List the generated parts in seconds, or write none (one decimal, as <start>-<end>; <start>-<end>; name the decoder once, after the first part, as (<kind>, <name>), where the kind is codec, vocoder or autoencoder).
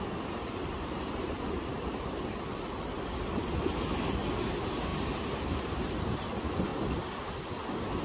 0.6-2.4 (vocoder, BigVGAN v2); 4.9-6.2